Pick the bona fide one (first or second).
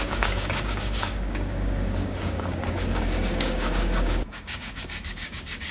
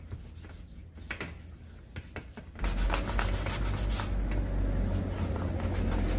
second